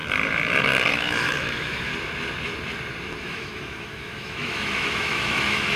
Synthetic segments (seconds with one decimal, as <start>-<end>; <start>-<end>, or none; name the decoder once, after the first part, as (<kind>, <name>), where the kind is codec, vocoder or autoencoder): 0.9-1.9 (autoencoder, DAC-VAE); 3.2-5.8